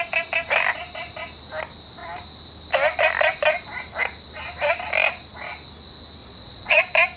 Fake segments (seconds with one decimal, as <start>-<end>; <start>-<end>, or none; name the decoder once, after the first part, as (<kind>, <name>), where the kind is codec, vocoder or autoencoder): 6.2-6.8 (vocoder, Vocos)